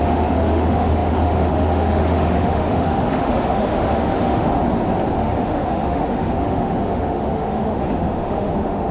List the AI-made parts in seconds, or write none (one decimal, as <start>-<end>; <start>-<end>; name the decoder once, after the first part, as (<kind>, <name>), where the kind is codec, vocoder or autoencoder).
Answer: 0.0-4.6 (autoencoder, DAC-VAE); 5.2-8.9